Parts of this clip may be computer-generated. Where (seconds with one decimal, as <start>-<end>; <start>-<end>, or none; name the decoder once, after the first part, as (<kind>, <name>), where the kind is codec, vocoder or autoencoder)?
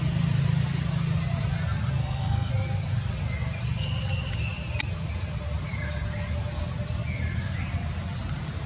2.0-2.5 (codec, SNAC)